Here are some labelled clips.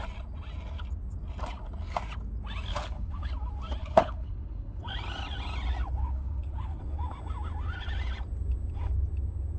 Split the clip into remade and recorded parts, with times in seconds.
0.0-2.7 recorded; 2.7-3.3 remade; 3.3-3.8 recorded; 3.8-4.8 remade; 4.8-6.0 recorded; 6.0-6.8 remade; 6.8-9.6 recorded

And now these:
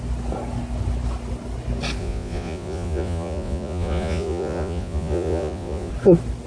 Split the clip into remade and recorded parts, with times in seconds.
0.0-2.0 recorded; 2.0-5.9 remade; 5.9-6.5 recorded

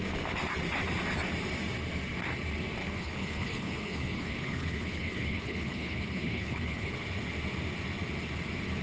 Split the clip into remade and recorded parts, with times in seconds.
0.0-2.8 recorded; 2.8-6.9 remade; 6.9-8.8 recorded